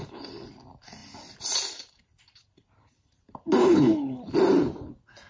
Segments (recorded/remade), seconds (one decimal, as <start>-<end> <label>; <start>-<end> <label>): 0.0-3.6 recorded; 3.6-4.2 remade; 4.2-5.3 recorded